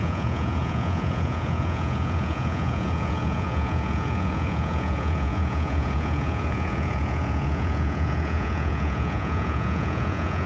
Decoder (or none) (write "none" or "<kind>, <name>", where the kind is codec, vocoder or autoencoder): vocoder, Vocos